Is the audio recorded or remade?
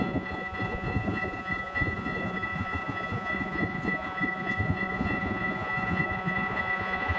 remade